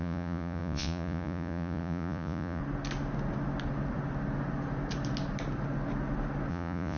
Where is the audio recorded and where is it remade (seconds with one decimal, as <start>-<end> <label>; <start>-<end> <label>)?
0.0-2.6 remade; 2.6-6.5 recorded; 6.5-7.0 remade